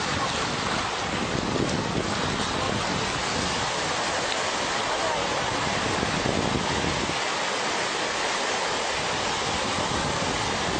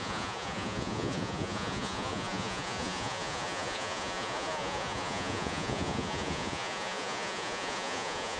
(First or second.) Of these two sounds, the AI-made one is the second